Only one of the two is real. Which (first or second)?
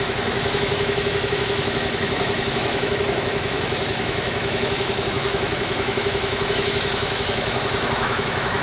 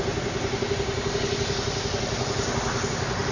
second